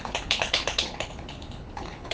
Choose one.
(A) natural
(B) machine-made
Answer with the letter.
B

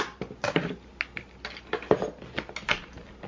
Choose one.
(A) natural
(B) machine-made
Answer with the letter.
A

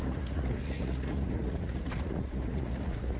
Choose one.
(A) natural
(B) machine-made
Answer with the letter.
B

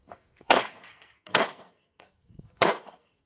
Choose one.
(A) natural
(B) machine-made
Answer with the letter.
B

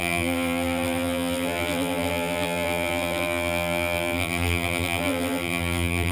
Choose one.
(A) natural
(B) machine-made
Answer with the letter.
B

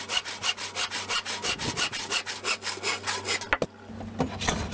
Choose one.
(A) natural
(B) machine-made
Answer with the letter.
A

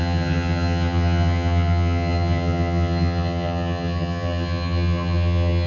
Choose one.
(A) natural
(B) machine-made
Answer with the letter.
B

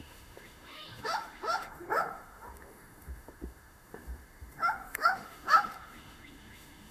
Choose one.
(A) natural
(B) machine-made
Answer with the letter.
B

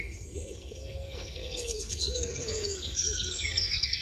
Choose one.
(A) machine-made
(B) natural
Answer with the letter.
A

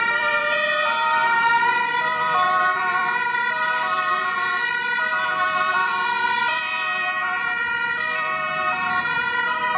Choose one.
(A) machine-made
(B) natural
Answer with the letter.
A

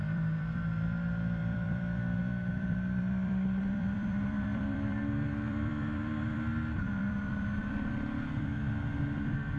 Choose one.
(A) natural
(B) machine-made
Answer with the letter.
B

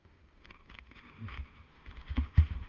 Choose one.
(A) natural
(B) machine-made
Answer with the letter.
B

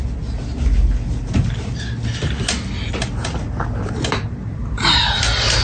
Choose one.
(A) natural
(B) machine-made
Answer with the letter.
A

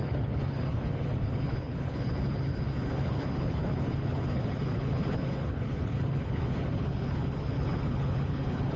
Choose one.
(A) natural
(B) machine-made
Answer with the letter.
B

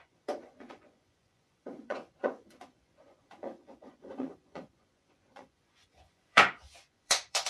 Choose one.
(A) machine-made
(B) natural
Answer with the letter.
A